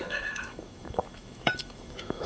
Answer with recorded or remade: remade